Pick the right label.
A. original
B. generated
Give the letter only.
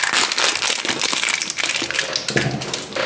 A